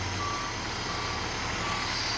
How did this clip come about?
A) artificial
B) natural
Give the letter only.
B